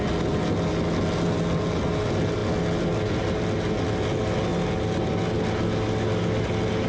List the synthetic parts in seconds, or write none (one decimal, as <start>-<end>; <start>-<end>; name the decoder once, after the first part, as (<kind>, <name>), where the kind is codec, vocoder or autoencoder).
none